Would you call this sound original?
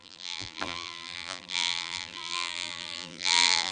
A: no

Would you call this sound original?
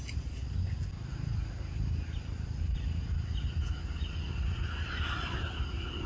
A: yes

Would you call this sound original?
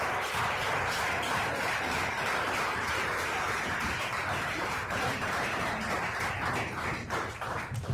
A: no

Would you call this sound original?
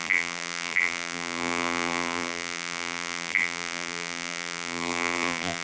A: no